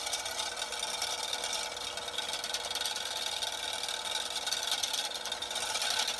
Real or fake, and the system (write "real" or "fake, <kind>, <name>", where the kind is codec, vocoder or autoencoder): real